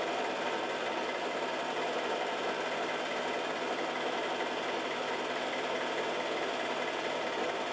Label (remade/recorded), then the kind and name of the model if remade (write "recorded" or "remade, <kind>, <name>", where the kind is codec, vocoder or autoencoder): recorded